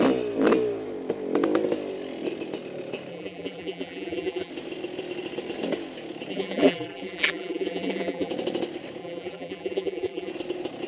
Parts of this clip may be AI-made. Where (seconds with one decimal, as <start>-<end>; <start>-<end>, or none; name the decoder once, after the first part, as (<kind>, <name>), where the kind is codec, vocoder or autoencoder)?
3.1-4.5 (vocoder, BigVGAN v2); 6.3-8.3; 9.0-10.3